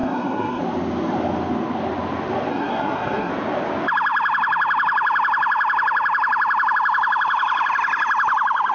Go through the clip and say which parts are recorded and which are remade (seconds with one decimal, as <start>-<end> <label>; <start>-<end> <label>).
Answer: 0.0-0.6 remade; 0.6-2.5 recorded; 2.5-3.3 remade; 3.3-8.7 recorded